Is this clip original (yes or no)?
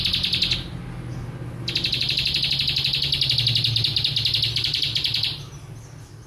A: yes